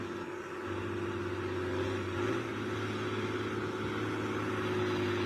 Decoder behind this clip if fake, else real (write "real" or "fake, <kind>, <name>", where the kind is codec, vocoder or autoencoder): real